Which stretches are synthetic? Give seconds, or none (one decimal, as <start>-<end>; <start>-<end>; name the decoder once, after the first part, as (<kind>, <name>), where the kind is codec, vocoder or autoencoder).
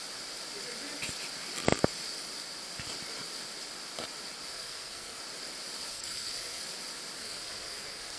4.5-5.2 (codec, SNAC); 5.9-6.6; 7.2-8.2